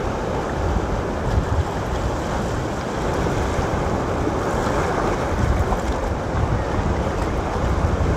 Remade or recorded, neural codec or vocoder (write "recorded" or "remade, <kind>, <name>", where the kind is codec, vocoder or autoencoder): recorded